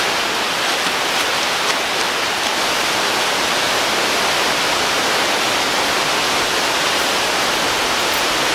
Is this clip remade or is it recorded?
recorded